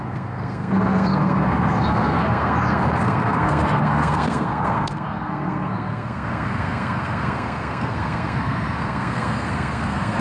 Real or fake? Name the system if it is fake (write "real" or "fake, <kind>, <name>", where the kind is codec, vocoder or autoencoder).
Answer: fake, codec, SNAC